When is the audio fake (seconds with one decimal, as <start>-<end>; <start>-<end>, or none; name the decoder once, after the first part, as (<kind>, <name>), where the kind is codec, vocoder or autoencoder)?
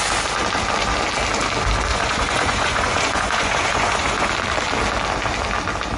1.9-4.3 (vocoder, Vocos)